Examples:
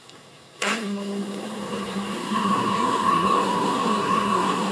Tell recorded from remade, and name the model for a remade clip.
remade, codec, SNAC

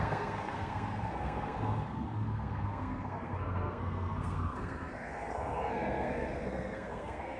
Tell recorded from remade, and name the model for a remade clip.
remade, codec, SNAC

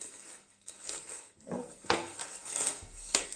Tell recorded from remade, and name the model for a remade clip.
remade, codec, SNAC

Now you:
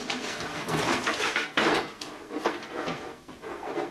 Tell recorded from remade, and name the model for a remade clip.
remade, codec, SNAC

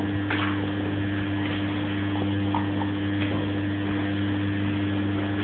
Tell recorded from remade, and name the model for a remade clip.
recorded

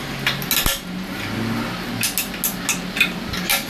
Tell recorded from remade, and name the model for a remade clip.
recorded